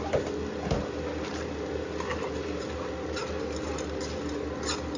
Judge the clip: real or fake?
real